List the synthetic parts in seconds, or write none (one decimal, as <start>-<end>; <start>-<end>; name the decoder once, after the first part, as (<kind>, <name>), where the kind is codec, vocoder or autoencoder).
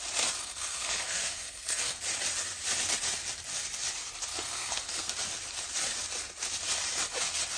0.4-2.0 (codec, SNAC); 4.3-5.1